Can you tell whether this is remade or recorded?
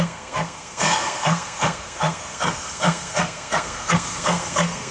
remade